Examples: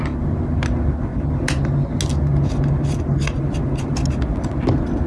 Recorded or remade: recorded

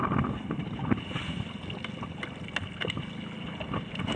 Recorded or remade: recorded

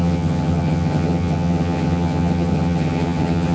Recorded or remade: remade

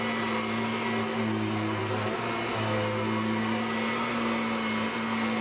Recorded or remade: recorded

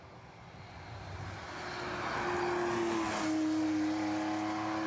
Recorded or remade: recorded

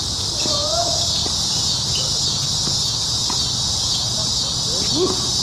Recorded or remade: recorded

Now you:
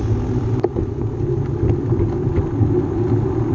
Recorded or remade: recorded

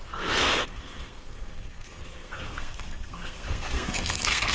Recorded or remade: remade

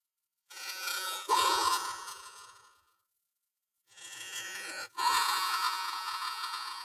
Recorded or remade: remade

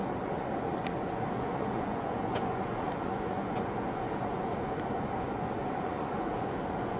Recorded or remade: remade